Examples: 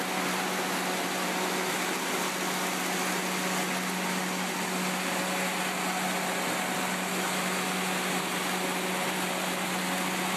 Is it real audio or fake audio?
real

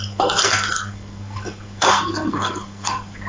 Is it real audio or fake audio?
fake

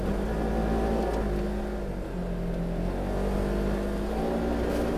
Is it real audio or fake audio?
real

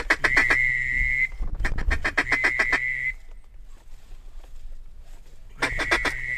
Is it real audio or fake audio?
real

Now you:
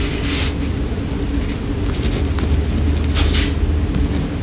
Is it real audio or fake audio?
real